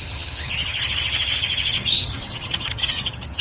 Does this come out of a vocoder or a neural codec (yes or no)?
yes